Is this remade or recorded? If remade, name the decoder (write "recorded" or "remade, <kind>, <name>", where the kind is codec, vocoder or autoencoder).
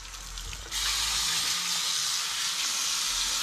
recorded